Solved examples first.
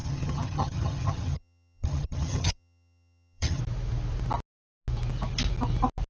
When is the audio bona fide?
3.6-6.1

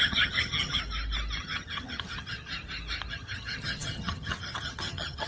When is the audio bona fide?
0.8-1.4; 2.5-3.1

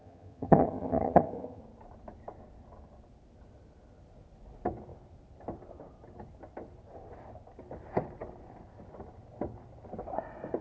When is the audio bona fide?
1.6-10.6

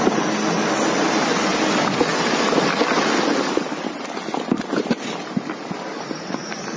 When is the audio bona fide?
0.0-6.8